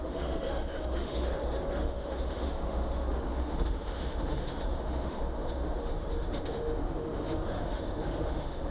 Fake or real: fake